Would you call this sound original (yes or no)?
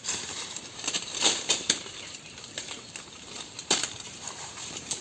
no